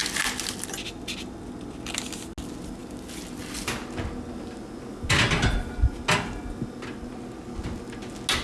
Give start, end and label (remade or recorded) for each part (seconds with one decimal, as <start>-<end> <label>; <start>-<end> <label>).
0.0-8.4 recorded